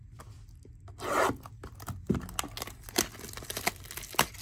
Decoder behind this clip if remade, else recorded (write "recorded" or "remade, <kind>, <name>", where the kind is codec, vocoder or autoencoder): recorded